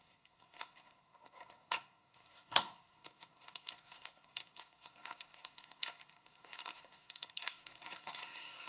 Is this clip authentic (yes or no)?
no